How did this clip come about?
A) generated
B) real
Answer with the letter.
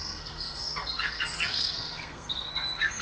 A